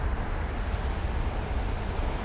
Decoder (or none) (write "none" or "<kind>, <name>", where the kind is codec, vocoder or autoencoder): none